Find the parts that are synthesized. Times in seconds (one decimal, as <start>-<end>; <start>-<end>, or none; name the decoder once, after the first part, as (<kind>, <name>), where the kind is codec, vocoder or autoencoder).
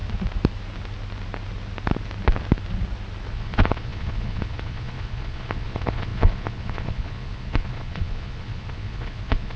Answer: 3.3-9.6 (vocoder, Vocos)